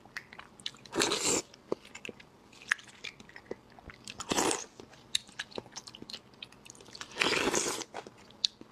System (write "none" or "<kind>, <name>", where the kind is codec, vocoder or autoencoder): none